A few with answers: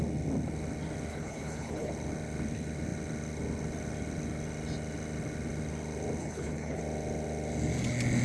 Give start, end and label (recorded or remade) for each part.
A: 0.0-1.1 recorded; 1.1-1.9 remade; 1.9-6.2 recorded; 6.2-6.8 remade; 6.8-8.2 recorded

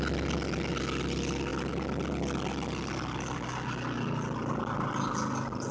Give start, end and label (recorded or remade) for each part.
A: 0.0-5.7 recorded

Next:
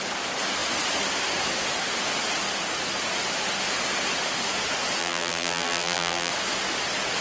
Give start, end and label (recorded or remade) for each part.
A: 0.0-5.0 recorded; 5.0-6.3 remade; 6.3-7.2 recorded